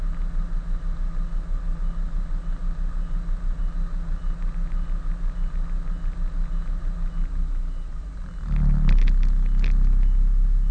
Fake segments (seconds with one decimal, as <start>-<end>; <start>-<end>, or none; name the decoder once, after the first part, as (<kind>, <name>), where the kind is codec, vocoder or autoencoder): none